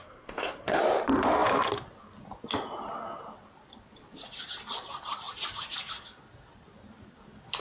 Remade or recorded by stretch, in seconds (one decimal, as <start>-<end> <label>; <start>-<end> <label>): 0.0-0.8 remade; 0.8-7.6 recorded